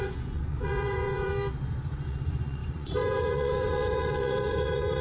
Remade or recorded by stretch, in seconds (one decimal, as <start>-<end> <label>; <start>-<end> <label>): 0.0-1.3 remade; 1.3-1.8 recorded; 1.8-5.0 remade